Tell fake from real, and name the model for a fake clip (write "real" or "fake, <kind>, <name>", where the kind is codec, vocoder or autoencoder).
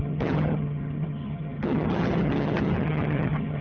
fake, vocoder, HiFi-GAN